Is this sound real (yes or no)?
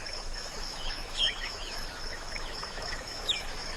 no